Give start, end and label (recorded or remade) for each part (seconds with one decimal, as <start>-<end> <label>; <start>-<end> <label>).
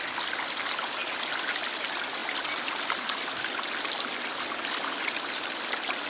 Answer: 0.0-6.1 recorded